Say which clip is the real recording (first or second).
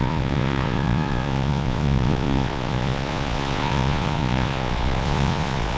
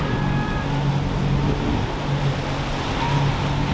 second